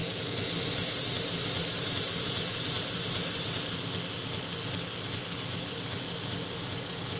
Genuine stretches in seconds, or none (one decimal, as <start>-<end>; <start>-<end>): 0.0-1.6; 3.6-7.2